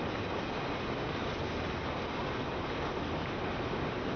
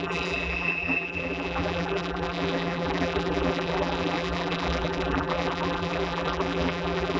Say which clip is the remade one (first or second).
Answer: second